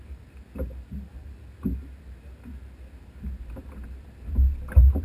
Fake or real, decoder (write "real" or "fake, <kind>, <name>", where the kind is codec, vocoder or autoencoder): real